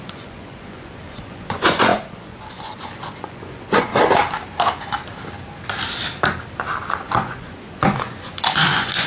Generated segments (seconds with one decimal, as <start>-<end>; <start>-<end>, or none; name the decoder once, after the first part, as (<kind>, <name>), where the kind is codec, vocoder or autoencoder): 0.0-3.9 (vocoder, Vocos); 7.0-9.1